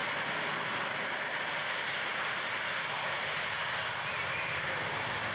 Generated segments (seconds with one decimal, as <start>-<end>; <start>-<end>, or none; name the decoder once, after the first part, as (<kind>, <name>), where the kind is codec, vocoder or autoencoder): 0.0-0.8 (vocoder, BigVGAN v2)